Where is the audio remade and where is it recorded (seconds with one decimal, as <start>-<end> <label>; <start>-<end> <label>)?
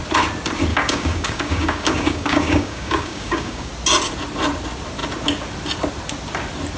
0.0-0.7 recorded; 0.7-3.7 remade; 3.7-6.8 recorded